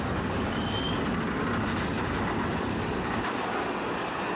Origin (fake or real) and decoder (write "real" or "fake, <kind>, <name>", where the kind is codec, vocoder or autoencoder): real